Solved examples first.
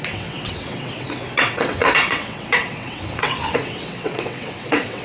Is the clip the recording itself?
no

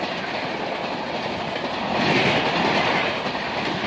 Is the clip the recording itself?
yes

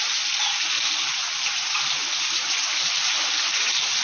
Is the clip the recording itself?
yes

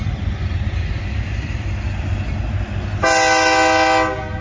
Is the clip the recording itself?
yes